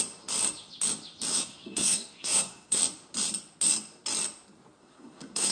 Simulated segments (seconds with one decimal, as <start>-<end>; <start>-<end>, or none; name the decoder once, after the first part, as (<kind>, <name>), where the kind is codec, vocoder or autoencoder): 1.3-2.8 (codec, SNAC); 4.8-5.5

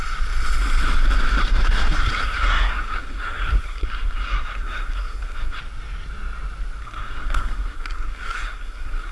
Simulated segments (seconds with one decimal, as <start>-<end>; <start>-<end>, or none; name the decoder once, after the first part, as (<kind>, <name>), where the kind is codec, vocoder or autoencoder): 1.4-5.6 (codec, SNAC); 6.8-9.1